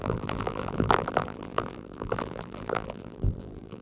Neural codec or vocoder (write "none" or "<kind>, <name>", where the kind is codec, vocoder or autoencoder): vocoder, BigVGAN v2